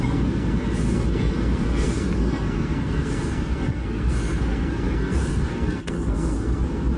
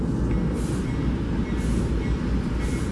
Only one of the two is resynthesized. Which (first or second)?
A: first